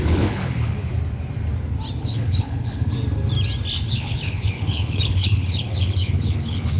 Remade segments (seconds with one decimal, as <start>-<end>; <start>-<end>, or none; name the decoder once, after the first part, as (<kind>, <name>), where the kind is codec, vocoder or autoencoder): 0.0-0.9 (codec, HILCodec); 2.0-2.9; 3.9-6.8